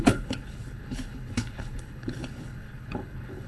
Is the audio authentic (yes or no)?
no